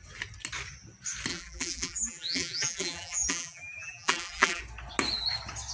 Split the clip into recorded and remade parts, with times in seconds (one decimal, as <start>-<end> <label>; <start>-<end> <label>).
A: 0.0-1.3 recorded; 1.3-4.6 remade; 4.6-5.7 recorded